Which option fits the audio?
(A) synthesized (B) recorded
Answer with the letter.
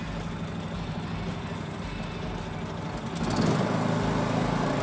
B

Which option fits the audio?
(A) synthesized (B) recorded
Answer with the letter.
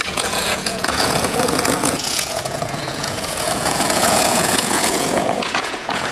A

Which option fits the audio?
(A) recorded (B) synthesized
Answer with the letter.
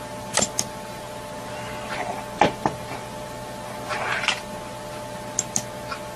A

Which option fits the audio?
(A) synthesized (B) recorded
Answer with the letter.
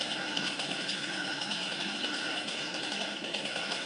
A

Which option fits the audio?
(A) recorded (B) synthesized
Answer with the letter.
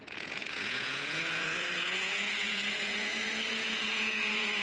B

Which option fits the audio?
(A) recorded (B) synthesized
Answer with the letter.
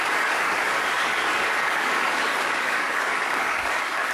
B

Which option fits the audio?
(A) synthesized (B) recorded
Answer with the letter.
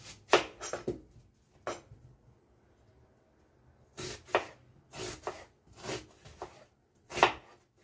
B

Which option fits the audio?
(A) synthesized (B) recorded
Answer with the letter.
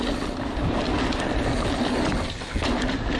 B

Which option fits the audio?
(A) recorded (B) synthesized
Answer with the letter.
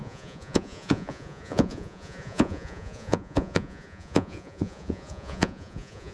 B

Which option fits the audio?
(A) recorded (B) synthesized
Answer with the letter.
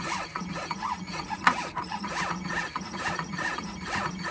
B